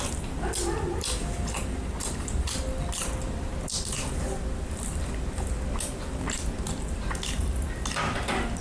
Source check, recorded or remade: recorded